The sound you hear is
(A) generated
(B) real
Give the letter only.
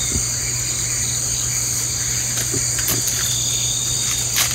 B